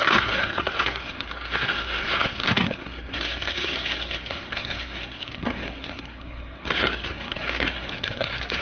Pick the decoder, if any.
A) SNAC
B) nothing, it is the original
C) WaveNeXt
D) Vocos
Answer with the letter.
A